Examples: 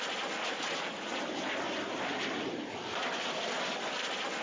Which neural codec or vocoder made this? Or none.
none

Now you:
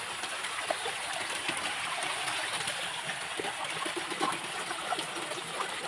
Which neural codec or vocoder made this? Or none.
none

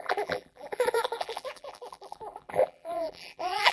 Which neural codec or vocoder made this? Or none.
vocoder, BigVGAN v2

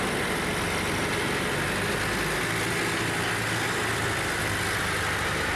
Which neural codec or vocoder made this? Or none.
none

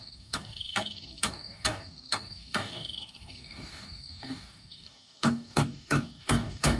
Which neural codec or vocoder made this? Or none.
codec, DAC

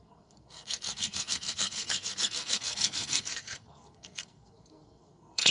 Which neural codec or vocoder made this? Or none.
codec, SNAC